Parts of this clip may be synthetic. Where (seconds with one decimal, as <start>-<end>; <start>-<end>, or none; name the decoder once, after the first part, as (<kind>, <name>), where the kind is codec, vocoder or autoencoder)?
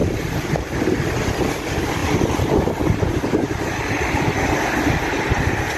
0.0-1.0 (vocoder, BigVGAN v2)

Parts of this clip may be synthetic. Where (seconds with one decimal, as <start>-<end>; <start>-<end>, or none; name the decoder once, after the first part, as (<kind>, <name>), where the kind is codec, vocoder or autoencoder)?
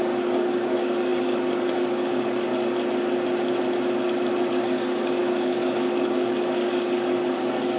0.0-2.5 (codec, DAC); 4.5-7.8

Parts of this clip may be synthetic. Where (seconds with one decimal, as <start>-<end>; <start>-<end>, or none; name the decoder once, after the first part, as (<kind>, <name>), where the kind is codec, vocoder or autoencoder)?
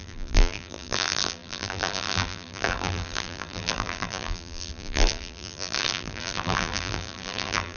0.0-7.8 (vocoder, BigVGAN v2)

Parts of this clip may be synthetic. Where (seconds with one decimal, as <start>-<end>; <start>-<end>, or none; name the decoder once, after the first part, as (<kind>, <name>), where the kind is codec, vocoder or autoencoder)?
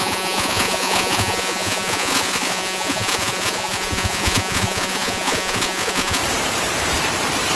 0.0-6.2 (vocoder, Vocos)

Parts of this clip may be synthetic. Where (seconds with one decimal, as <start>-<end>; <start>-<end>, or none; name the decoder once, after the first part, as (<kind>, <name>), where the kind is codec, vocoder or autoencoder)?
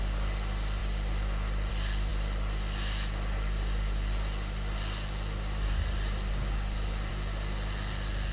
none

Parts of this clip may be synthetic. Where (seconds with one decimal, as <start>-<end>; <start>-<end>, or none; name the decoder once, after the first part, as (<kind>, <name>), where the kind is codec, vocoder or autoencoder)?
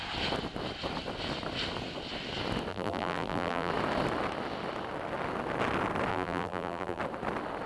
2.7-3.7 (vocoder, BigVGAN v2); 6.1-7.0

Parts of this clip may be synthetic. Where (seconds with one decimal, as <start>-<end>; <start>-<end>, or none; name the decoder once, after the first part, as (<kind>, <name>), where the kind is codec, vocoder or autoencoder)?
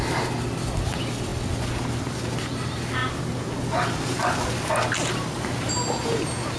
none